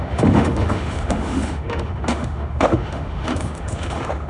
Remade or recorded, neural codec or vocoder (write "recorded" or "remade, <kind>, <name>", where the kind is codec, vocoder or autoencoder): remade, autoencoder, DAC-VAE